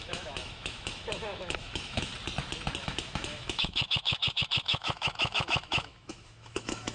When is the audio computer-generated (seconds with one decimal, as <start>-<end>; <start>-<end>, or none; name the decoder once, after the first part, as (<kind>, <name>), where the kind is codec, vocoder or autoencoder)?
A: 0.0-2.1 (autoencoder, DAC-VAE); 2.8-6.9